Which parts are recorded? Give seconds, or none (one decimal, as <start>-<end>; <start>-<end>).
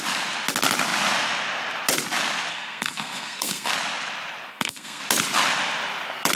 0.0-2.5; 3.7-4.5; 5.0-6.4